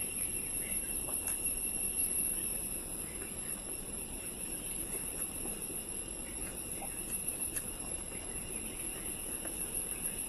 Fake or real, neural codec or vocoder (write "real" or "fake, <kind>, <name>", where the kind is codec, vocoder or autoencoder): fake, vocoder, BigVGAN v2